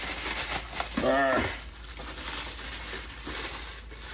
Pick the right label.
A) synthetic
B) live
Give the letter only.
B